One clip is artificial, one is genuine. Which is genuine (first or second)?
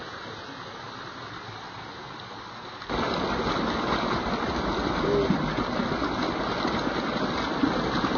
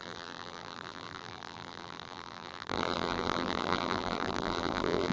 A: first